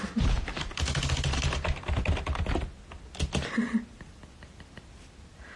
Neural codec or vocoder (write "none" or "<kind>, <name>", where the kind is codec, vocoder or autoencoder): none